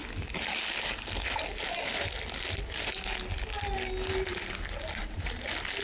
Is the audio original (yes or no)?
yes